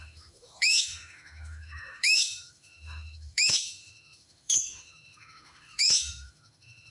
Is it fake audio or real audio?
fake